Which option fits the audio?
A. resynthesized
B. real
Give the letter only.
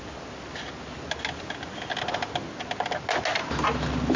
B